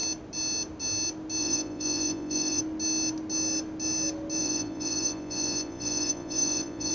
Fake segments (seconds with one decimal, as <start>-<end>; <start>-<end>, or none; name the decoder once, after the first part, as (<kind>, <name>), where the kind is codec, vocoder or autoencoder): 1.4-2.6 (vocoder, Vocos); 4.4-6.9